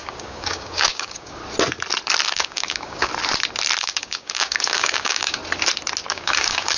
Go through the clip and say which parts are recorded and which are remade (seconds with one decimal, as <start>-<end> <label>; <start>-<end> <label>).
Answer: 0.0-1.4 remade; 1.4-2.3 recorded; 2.3-3.1 remade; 3.1-3.8 recorded; 3.8-5.4 remade; 5.4-6.1 recorded; 6.1-6.8 remade